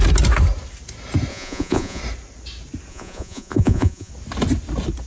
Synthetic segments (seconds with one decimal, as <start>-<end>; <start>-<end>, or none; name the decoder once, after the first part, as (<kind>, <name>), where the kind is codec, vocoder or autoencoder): 1.3-2.0 (vocoder, Vocos); 2.9-4.1